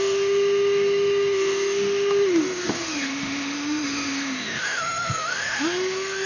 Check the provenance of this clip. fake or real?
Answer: fake